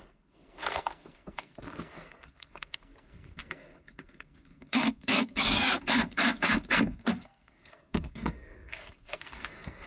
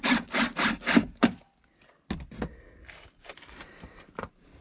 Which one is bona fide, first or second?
second